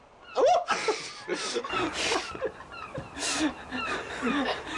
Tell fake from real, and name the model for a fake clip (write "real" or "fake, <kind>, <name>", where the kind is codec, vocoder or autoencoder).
real